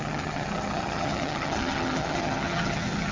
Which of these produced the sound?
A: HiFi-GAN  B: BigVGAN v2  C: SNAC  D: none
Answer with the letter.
A